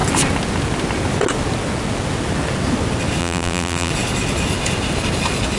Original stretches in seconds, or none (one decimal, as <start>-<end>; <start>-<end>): 0.0-3.2; 3.9-5.6